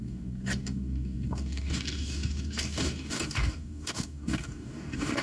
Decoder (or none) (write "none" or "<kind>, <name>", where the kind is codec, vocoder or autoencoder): codec, DAC